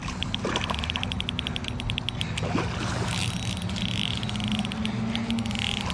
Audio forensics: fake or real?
real